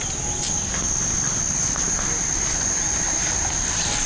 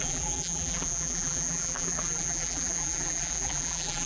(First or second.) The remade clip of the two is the second